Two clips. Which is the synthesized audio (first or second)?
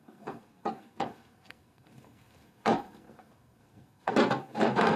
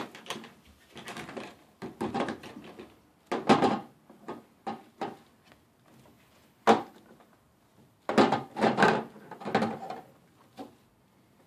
first